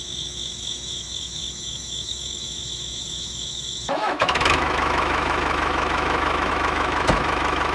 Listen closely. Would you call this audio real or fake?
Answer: fake